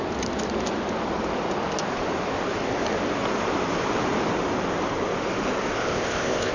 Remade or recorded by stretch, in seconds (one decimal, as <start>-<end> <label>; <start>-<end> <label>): 0.0-5.8 recorded; 5.8-6.5 remade